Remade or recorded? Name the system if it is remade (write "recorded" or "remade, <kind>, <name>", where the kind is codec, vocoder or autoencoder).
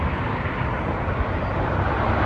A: recorded